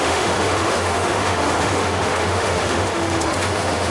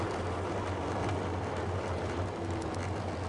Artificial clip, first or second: first